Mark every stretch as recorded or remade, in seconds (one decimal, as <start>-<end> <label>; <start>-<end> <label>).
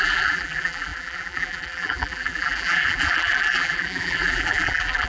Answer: 0.0-5.1 remade